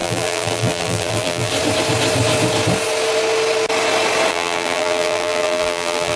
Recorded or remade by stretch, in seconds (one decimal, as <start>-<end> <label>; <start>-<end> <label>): 0.0-1.5 remade; 1.5-4.3 recorded; 4.3-6.2 remade